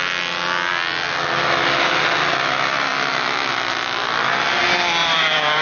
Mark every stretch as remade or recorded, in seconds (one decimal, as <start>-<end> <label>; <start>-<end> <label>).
0.0-5.0 recorded; 5.0-5.6 remade